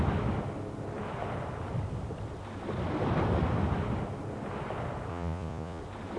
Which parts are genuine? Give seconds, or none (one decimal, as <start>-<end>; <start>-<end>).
0.0-5.1; 5.8-6.2